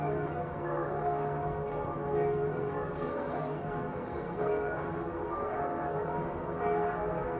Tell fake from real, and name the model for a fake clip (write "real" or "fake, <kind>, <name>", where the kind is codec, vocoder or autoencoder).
fake, codec, SNAC